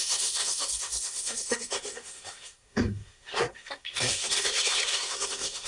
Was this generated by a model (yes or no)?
yes